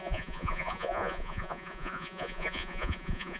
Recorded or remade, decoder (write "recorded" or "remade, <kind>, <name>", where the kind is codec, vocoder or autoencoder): remade, vocoder, Vocos